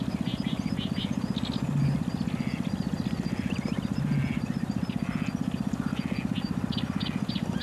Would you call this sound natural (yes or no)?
yes